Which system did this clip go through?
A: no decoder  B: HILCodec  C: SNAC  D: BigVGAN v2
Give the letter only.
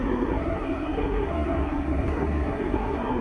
C